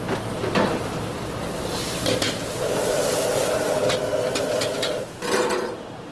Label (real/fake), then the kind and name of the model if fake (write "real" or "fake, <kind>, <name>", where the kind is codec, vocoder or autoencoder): real